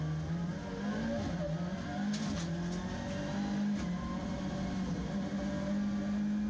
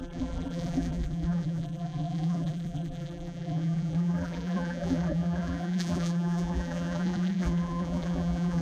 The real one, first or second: first